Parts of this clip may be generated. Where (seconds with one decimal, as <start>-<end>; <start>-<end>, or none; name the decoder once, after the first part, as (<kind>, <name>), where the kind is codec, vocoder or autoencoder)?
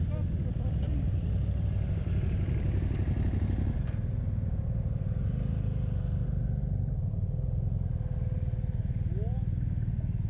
none